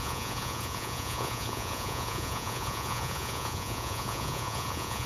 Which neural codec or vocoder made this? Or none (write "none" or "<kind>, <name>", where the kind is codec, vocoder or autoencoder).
vocoder, Vocos